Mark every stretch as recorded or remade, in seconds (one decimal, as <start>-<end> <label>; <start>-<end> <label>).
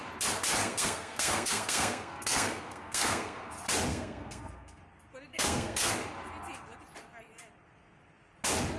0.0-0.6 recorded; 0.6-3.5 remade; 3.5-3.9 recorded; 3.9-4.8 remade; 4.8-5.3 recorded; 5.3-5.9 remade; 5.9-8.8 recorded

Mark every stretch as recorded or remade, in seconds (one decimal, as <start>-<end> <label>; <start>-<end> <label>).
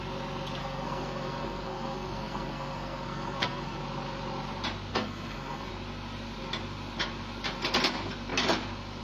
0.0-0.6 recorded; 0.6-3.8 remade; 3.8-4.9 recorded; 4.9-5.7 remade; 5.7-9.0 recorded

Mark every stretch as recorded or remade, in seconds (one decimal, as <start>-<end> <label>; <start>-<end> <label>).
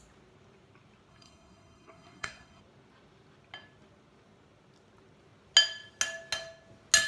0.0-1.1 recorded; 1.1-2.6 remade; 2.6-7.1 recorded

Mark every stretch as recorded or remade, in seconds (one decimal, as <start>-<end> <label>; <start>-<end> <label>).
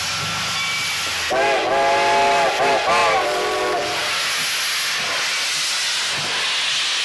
0.0-3.0 recorded; 3.0-3.6 remade; 3.6-7.0 recorded